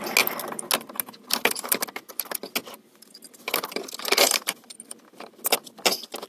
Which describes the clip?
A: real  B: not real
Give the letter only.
A